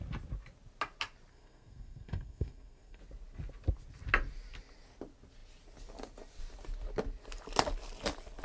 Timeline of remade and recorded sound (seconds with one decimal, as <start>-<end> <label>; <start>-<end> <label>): 0.0-1.3 recorded; 1.3-3.0 remade; 3.0-8.4 recorded